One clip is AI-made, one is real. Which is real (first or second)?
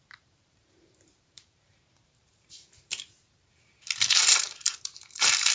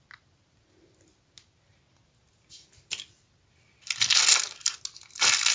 second